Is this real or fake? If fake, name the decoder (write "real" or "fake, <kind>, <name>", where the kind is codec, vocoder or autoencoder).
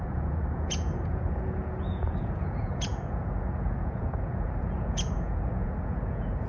fake, vocoder, Vocos